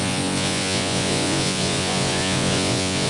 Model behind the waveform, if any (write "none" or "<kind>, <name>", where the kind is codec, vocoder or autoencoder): vocoder, Vocos